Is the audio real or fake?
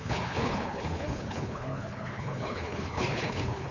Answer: fake